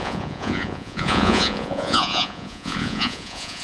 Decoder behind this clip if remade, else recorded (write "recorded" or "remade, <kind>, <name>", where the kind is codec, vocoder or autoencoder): remade, vocoder, Vocos